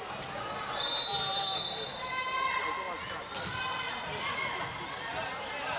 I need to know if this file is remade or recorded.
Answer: recorded